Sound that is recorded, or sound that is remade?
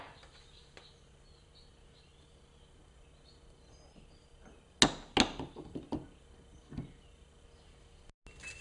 recorded